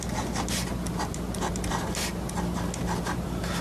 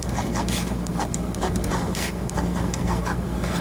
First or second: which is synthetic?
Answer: second